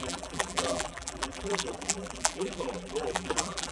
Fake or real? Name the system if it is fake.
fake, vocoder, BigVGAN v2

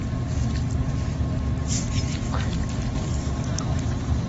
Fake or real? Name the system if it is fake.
real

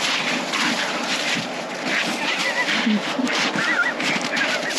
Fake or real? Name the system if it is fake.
real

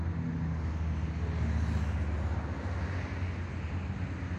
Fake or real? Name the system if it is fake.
real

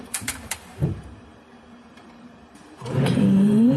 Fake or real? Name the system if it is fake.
fake, vocoder, BigVGAN v2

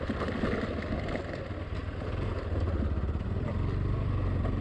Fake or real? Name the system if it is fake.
fake, vocoder, BigVGAN v2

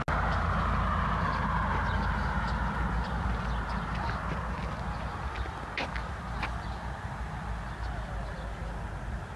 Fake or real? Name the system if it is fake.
real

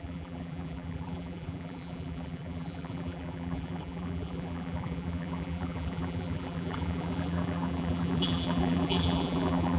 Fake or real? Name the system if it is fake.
fake, vocoder, BigVGAN v2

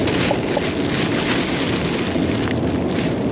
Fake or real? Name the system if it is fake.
real